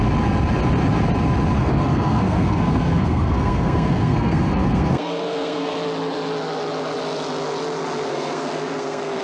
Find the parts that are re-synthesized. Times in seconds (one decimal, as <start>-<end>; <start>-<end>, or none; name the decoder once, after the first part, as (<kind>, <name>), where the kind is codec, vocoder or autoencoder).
1.6-5.7 (codec, SNAC); 8.1-9.2